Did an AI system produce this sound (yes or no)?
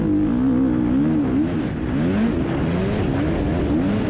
no